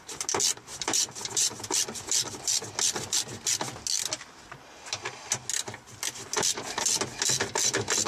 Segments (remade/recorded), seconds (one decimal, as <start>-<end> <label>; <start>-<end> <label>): 0.0-0.7 recorded; 0.7-1.6 remade; 1.6-8.1 recorded